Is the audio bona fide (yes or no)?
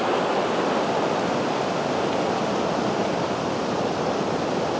yes